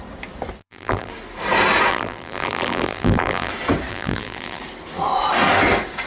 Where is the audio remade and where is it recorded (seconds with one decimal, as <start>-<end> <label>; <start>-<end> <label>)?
0.0-0.6 recorded; 0.6-1.1 remade; 1.1-1.9 recorded; 1.9-3.5 remade; 3.5-3.9 recorded; 3.9-4.6 remade; 4.6-6.1 recorded